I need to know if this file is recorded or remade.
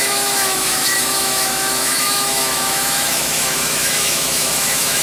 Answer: remade